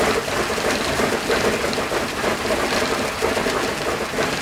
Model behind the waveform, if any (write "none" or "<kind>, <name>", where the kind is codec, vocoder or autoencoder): none